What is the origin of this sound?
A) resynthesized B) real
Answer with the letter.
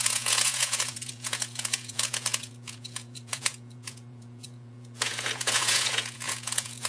A